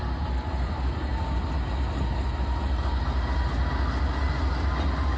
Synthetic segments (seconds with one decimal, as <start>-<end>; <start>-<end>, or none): none